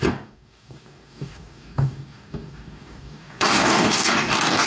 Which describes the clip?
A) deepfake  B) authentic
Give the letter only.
A